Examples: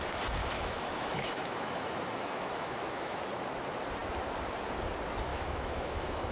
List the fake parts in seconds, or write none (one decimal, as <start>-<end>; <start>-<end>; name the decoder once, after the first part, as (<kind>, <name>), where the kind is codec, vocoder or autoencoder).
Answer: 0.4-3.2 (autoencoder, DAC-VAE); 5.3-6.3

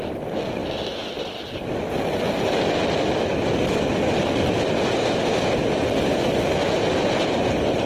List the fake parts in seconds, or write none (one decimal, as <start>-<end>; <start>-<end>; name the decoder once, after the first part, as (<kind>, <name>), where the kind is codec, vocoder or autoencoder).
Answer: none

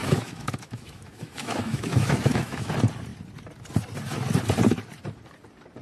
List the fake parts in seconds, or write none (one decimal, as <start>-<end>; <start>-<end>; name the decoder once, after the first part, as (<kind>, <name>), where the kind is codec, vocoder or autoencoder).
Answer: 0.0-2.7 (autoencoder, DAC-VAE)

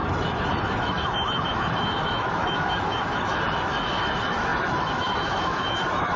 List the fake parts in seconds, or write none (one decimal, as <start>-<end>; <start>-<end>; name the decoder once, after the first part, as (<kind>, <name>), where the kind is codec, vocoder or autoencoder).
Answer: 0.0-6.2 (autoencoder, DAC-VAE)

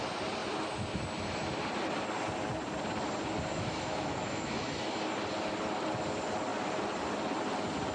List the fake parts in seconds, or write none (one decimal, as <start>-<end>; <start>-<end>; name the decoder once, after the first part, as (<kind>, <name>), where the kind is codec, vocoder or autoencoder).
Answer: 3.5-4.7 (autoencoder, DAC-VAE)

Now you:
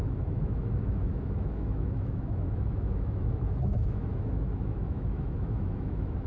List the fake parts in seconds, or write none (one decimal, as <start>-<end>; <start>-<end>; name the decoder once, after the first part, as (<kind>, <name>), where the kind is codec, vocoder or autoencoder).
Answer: 0.0-6.3 (autoencoder, DAC-VAE)

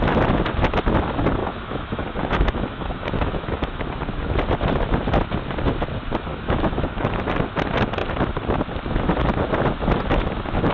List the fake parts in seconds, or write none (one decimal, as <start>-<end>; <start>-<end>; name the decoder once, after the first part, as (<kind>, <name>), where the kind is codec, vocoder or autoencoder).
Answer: 1.4-3.8 (autoencoder, DAC-VAE); 6.3-7.1

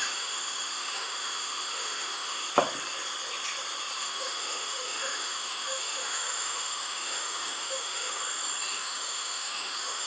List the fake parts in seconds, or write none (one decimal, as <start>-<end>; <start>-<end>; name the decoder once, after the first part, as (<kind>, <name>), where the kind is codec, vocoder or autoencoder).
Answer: 0.0-2.5 (autoencoder, DAC-VAE); 4.0-8.2; 8.7-10.1